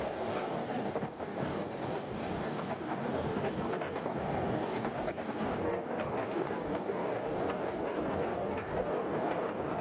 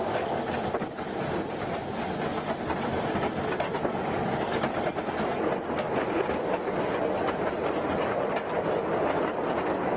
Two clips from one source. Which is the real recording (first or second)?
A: second